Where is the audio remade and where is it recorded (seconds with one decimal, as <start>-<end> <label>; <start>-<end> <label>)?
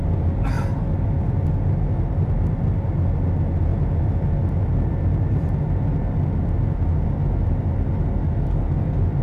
0.0-9.2 recorded